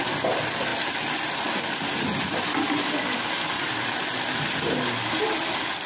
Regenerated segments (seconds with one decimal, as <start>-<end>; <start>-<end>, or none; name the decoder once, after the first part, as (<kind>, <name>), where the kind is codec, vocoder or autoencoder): none